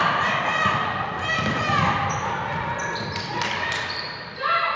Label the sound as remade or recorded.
recorded